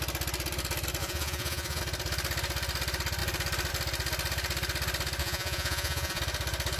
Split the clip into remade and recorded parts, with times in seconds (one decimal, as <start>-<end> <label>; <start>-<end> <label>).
0.0-1.0 recorded; 1.0-1.8 remade; 1.8-5.2 recorded; 5.2-6.2 remade; 6.2-6.8 recorded

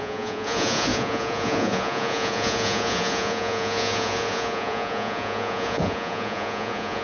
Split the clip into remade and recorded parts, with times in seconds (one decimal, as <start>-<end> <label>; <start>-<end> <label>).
0.0-7.0 remade

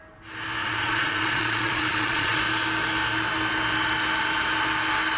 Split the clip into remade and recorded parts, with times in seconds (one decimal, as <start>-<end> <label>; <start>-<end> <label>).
0.0-0.6 recorded; 0.6-2.4 remade; 2.4-5.2 recorded

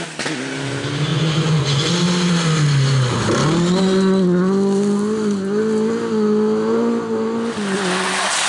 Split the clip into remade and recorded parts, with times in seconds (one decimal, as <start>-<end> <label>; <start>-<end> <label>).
0.0-1.1 recorded; 1.1-1.9 remade; 1.9-8.5 recorded

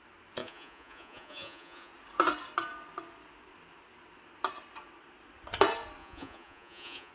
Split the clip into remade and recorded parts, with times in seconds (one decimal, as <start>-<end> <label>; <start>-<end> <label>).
0.0-0.4 recorded; 0.4-1.9 remade; 1.9-6.0 recorded; 6.0-7.1 remade